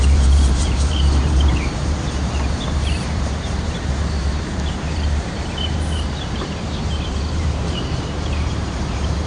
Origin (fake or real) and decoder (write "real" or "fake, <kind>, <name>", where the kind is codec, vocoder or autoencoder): fake, vocoder, BigVGAN v2